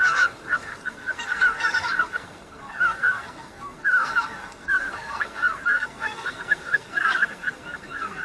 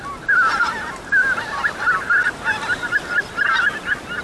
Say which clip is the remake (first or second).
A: first